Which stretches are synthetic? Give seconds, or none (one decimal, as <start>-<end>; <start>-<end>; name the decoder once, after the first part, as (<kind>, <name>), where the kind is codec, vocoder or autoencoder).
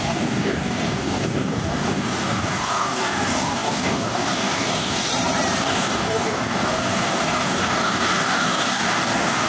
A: 0.0-5.1 (codec, DAC); 5.6-9.5